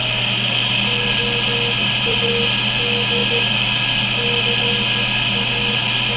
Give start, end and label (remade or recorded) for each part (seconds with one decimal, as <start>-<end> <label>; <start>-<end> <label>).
0.0-1.8 recorded; 1.8-2.3 remade; 2.3-6.2 recorded